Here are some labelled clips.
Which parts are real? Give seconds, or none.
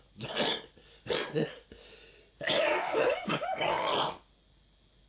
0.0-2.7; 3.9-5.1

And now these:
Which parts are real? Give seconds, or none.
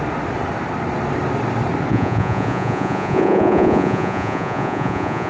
0.0-1.9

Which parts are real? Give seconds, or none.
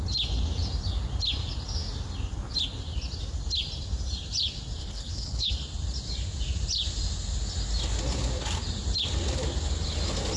0.0-4.8; 5.5-10.4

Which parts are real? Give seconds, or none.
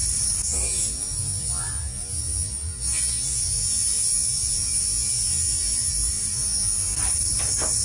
0.0-7.8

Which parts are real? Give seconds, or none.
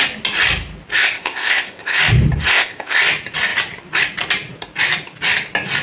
0.0-1.0; 2.0-2.5; 3.0-5.8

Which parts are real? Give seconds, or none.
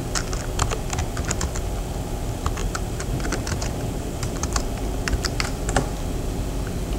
0.0-2.6; 4.6-7.0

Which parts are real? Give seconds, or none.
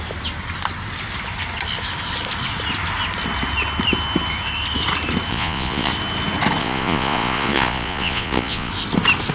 0.0-5.3; 5.9-6.6; 8.7-9.3